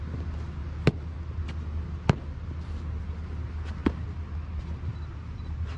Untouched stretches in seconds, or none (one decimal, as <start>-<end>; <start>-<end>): 0.0-5.8